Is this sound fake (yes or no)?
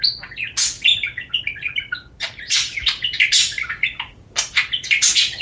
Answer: no